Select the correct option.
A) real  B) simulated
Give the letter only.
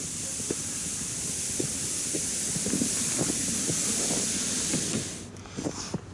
A